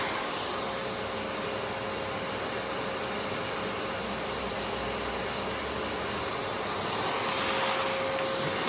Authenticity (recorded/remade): recorded